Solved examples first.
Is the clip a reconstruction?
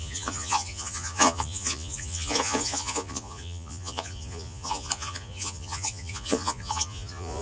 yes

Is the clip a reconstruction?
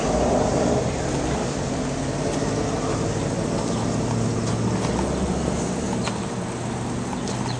no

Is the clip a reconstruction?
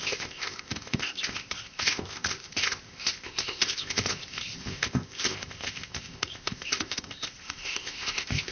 yes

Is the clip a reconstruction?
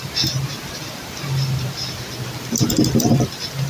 no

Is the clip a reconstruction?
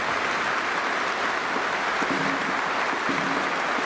no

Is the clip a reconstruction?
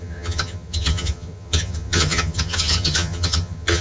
yes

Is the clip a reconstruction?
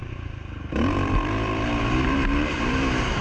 yes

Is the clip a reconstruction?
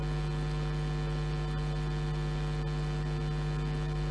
no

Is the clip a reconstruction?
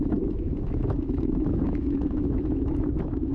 yes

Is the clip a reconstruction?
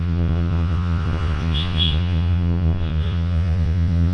yes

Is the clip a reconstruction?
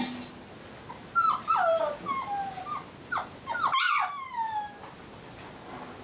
no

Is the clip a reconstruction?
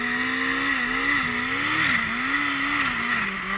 no